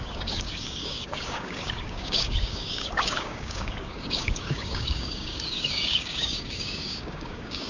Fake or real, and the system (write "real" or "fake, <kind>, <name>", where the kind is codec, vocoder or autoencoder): fake, codec, DAC